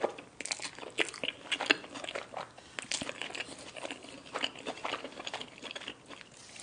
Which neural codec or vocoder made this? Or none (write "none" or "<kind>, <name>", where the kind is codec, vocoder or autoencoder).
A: none